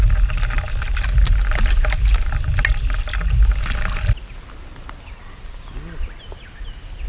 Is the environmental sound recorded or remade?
recorded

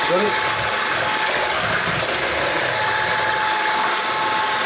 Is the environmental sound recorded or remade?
recorded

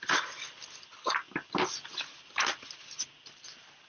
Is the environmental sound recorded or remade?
recorded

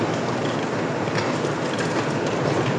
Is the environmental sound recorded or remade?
recorded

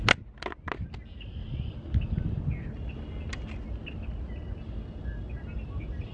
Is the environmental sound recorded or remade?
recorded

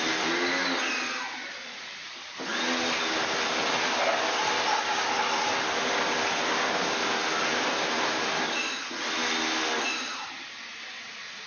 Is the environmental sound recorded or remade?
recorded